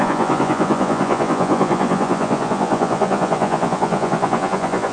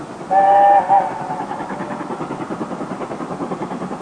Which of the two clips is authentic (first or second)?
second